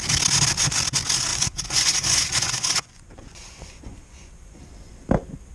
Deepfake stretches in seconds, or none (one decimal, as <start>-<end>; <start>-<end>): 1.3-4.6